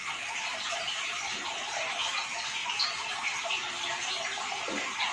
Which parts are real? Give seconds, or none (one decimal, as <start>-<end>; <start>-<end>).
0.0-5.1